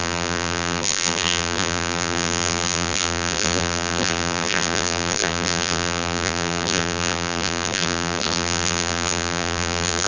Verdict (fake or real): fake